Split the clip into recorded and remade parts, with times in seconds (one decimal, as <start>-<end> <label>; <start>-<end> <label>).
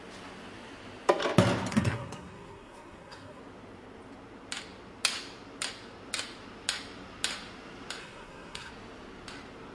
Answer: 0.0-1.7 recorded; 1.7-3.4 remade; 3.4-8.0 recorded; 8.0-8.7 remade; 8.7-9.7 recorded